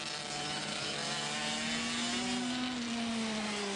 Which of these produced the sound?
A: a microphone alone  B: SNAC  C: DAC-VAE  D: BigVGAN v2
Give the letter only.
A